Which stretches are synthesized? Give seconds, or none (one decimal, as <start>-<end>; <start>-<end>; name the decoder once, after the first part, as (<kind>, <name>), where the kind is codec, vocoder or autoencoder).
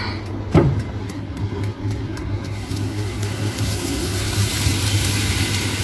1.0-4.5 (codec, SNAC)